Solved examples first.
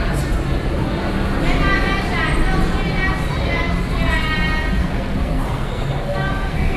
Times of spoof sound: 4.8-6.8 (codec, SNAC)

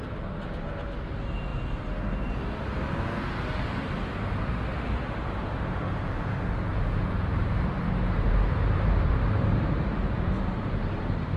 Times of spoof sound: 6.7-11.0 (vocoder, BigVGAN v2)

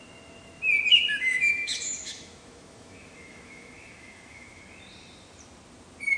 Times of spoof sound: 0.9-4.6 (autoencoder, DAC-VAE)

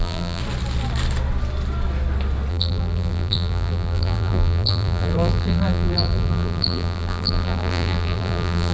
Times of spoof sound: 0.0-0.4 (vocoder, BigVGAN v2); 2.5-8.7

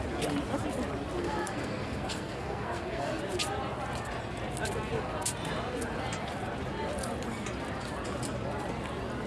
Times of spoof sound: 1.2-3.2 (codec, SNAC)

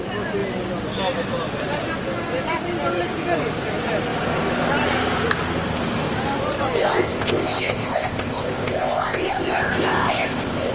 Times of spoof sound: 6.8-10.7 (codec, ZipCodec)

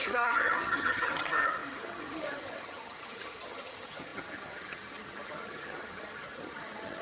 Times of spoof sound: 0.0-7.0 (vocoder, HiFi-GAN)

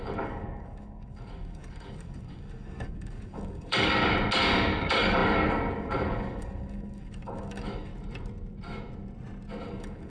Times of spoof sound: 0.0-4.0 (codec, DAC); 4.7-7.9; 9.7-10.1